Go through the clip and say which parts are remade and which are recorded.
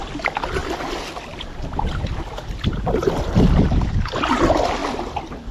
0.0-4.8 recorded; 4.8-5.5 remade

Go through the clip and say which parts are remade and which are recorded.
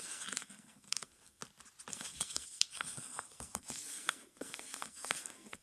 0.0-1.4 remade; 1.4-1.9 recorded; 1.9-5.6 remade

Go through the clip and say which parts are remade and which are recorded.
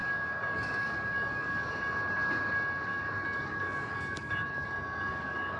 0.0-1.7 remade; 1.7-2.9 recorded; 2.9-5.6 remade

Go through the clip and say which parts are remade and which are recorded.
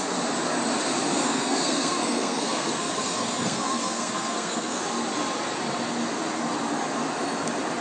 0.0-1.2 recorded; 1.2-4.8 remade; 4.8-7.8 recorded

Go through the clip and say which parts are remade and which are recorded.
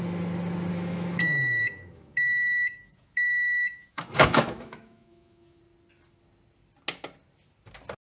0.0-0.7 recorded; 0.7-5.6 remade; 5.6-8.1 recorded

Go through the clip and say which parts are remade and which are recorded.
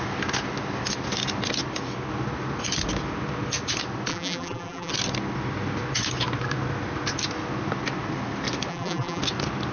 0.0-4.1 recorded; 4.1-4.9 remade; 4.9-8.7 recorded; 8.7-9.2 remade; 9.2-9.7 recorded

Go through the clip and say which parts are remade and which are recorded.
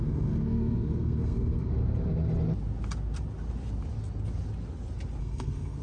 0.0-1.7 remade; 1.7-5.2 recorded; 5.2-5.8 remade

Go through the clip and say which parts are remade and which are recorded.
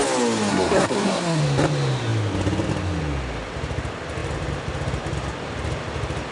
0.0-0.5 recorded; 0.5-1.4 remade; 1.4-6.3 recorded